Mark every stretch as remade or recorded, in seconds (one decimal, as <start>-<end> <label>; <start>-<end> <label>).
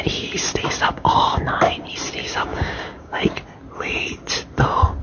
0.0-0.9 recorded; 0.9-1.4 remade; 1.4-2.2 recorded; 2.2-3.3 remade; 3.3-5.0 recorded